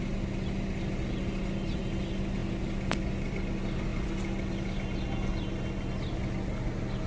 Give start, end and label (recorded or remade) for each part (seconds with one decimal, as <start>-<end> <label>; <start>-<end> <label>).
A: 0.0-7.1 recorded